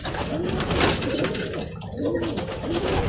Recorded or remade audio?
recorded